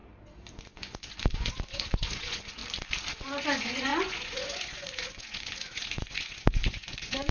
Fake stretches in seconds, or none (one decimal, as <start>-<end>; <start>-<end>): 0.6-2.6; 3.1-7.3